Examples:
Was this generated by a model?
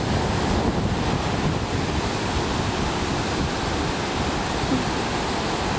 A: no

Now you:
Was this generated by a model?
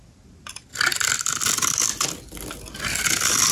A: no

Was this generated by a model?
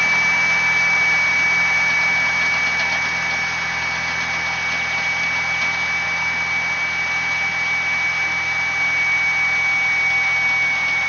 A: no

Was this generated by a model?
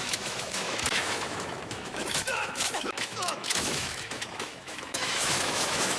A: yes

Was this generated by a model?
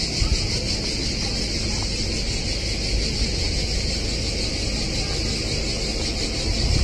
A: no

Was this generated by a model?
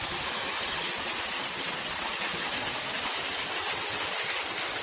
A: no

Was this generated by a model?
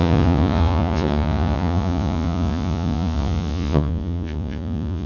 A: yes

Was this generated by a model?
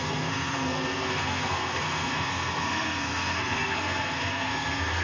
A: yes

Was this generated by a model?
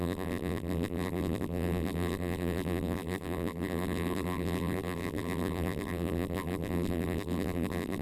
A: yes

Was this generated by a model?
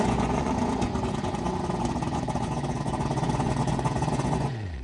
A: yes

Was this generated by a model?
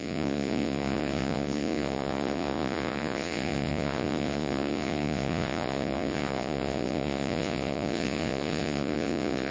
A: yes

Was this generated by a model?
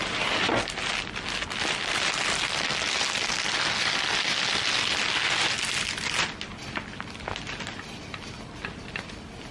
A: no